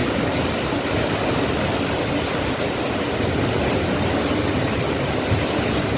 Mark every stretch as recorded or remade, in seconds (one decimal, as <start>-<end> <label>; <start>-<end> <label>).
0.0-6.0 recorded